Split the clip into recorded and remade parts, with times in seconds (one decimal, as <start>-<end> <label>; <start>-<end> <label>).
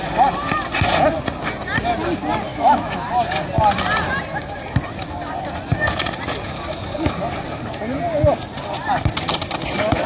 0.0-2.5 recorded; 2.5-3.1 remade; 3.1-10.1 recorded